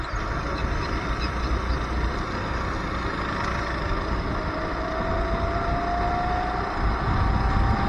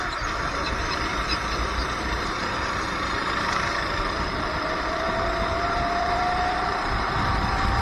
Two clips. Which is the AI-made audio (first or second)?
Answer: second